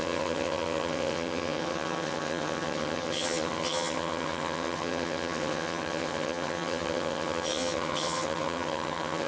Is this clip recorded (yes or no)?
no